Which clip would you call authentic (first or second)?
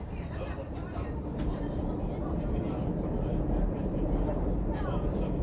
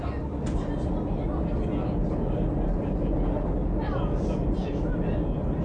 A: second